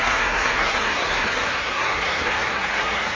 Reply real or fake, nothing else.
fake